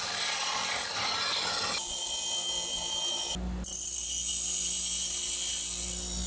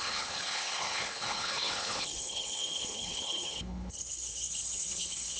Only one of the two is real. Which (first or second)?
first